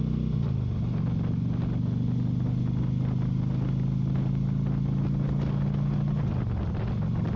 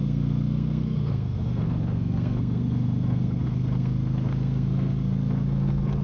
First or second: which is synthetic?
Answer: second